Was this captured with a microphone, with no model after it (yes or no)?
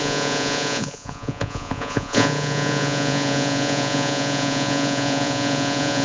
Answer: no